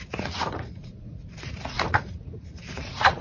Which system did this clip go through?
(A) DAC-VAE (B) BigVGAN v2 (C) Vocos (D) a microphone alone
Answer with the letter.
C